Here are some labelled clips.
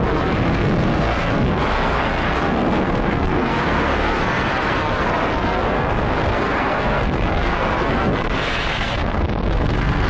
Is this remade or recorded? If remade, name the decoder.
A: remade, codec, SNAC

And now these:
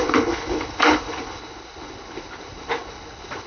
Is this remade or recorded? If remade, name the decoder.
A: remade, codec, HILCodec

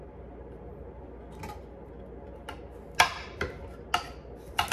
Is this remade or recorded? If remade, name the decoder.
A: recorded